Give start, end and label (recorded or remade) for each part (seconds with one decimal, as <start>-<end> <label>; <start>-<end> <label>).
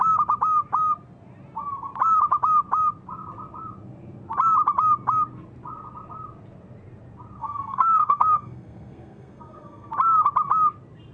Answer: 0.0-7.4 recorded; 7.4-9.9 remade; 9.9-11.1 recorded